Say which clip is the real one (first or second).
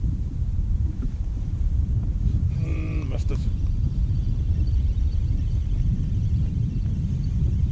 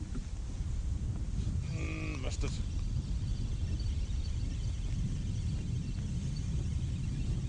second